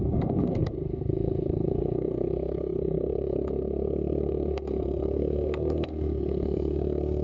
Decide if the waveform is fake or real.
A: fake